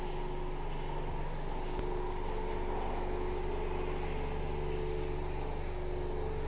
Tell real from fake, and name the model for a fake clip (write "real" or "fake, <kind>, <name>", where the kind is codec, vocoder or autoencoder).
real